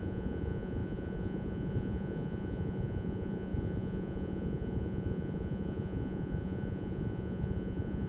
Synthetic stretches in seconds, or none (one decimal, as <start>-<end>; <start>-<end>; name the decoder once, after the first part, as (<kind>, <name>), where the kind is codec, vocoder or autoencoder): 0.0-8.1 (vocoder, Vocos)